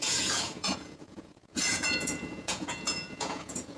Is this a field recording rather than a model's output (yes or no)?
no